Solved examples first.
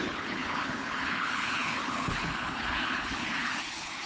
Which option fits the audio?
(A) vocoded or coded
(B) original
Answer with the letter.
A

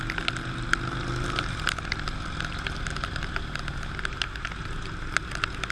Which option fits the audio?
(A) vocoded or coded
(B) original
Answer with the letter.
B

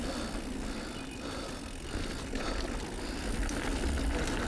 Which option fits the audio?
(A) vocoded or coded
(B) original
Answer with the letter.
B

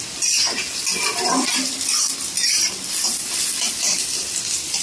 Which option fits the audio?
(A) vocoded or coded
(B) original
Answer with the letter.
A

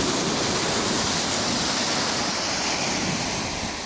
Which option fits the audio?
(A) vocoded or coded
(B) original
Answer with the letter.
B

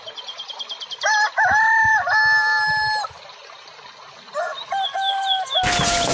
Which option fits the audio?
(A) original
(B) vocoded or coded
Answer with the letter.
A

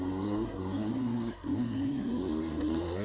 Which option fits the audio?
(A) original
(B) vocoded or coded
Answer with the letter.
B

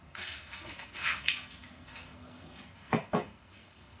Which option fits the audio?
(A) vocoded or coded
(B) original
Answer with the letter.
A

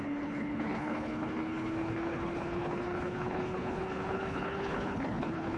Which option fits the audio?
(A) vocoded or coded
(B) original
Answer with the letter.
A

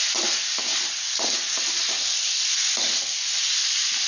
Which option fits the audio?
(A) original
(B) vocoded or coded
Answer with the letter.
A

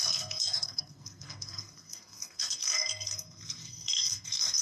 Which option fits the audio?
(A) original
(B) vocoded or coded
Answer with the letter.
B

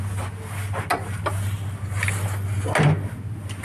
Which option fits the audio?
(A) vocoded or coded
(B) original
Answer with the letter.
B